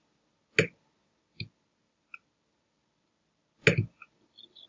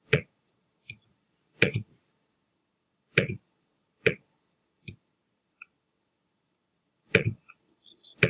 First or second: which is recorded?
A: first